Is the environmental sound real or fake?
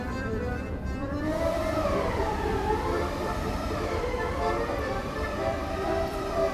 fake